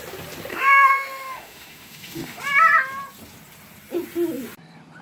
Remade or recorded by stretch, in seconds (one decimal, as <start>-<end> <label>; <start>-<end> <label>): 0.0-0.5 recorded; 0.5-2.4 remade; 2.4-5.0 recorded